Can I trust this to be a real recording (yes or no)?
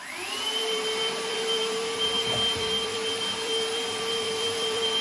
no